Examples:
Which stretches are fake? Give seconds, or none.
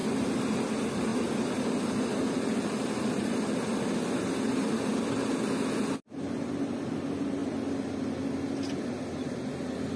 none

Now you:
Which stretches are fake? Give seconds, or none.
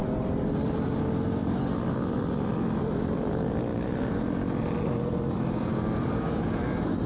0.9-1.4 (vocoder, BigVGAN v2); 2.3-7.1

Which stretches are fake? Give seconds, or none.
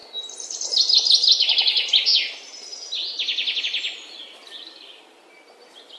none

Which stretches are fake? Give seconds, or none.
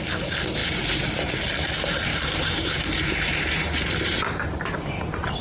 0.6-1.3 (vocoder, BigVGAN v2); 2.1-4.7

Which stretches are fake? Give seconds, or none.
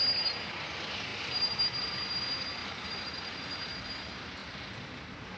2.6-3.9 (vocoder, BigVGAN v2)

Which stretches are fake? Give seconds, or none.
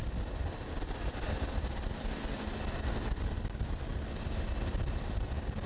0.0-5.7 (vocoder, BigVGAN v2)